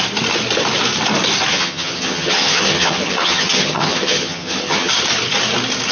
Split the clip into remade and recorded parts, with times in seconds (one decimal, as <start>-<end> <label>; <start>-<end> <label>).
0.0-1.5 recorded; 1.5-4.9 remade; 4.9-5.9 recorded